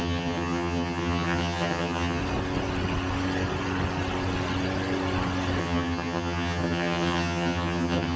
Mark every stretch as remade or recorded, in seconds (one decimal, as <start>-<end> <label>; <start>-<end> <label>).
0.0-2.2 remade; 2.2-5.6 recorded; 5.6-8.2 remade